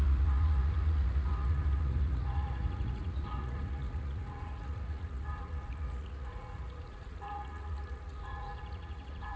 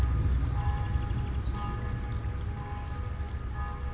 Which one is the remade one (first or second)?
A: first